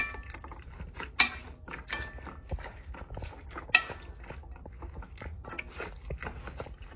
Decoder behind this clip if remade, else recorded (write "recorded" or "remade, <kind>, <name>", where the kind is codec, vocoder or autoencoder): recorded